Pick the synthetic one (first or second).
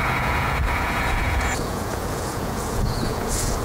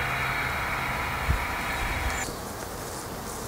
first